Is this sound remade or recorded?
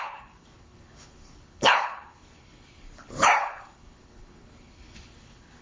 remade